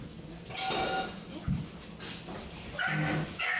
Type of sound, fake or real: real